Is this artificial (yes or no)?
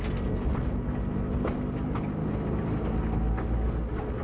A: no